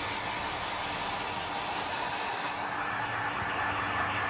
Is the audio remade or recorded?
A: recorded